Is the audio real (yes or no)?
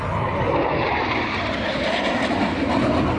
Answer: yes